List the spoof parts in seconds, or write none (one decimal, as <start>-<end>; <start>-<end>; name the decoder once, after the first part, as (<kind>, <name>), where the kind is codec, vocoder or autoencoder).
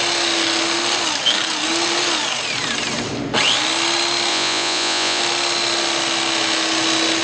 4.3-5.2 (vocoder, Vocos)